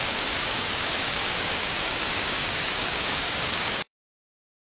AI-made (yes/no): yes